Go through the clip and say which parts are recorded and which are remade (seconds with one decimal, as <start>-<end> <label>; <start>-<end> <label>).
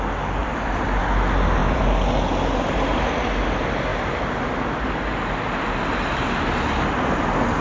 0.0-0.4 recorded; 0.4-1.0 remade; 1.0-1.6 recorded; 1.6-2.7 remade; 2.7-7.6 recorded